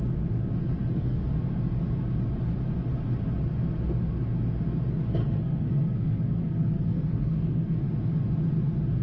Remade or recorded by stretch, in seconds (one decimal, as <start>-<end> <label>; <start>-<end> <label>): 0.0-0.6 recorded; 0.6-1.3 remade; 1.3-5.2 recorded; 5.2-7.8 remade; 7.8-9.0 recorded